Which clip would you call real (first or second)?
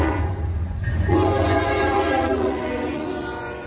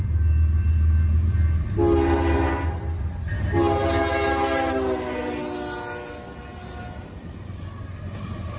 second